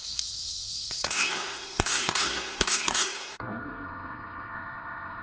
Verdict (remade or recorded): remade